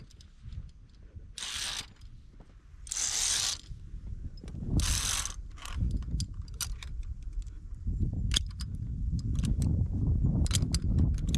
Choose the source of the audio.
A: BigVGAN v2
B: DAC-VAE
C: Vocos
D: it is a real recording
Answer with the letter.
D